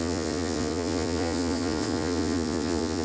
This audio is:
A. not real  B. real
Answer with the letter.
A